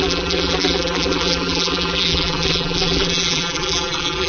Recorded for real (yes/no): no